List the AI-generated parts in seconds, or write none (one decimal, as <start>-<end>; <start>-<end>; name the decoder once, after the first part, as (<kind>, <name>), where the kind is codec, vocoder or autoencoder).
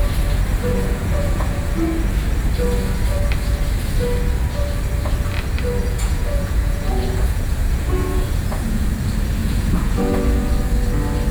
0.7-1.8 (vocoder, Vocos); 5.8-8.9; 9.4-10.5